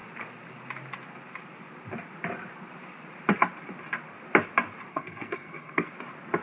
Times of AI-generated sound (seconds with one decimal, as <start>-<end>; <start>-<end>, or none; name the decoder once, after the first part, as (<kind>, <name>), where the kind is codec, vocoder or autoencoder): 4.9-5.9 (codec, SNAC)

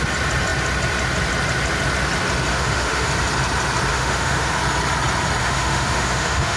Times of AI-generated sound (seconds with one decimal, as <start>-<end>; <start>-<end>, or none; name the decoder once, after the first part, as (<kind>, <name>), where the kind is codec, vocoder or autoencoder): 2.5-3.1 (autoencoder, DAC-VAE); 3.9-4.6; 5.4-6.6

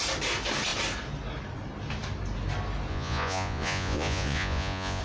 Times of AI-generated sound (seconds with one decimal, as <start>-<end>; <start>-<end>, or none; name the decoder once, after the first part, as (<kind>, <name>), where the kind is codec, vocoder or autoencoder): 2.9-5.0 (vocoder, Vocos)

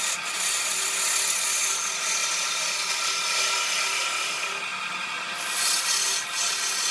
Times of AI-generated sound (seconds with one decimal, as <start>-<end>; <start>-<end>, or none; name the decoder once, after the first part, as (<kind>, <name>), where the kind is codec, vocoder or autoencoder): none

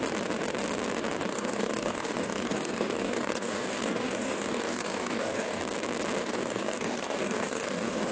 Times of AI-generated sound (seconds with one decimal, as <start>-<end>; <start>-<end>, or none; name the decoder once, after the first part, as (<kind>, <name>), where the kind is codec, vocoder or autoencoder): 1.3-5.6 (codec, DAC); 6.2-8.1

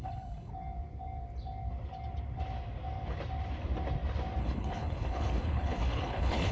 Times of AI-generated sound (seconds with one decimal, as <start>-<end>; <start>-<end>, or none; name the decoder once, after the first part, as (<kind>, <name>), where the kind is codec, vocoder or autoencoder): 0.0-0.5 (codec, HILCodec); 4.4-6.5